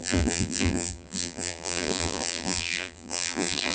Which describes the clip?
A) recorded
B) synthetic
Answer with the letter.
B